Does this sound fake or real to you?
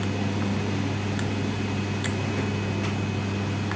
real